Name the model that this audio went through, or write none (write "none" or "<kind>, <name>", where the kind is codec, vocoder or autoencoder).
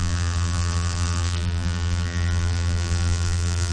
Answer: vocoder, BigVGAN v2